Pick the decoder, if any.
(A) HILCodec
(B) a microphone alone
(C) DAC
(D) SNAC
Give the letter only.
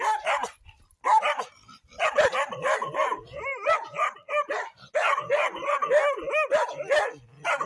B